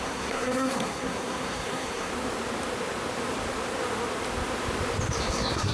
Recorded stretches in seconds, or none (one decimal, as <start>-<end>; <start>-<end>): 2.1-5.2